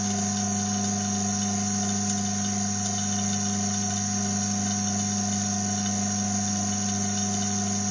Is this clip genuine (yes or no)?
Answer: yes